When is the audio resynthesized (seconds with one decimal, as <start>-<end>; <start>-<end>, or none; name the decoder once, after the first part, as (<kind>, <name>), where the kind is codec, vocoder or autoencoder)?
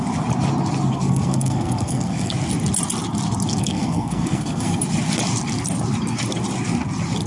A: 0.9-2.3 (codec, SNAC); 3.6-4.8